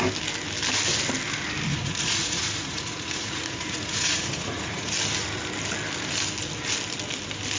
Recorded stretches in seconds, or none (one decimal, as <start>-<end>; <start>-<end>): 0.0-1.7; 4.9-7.6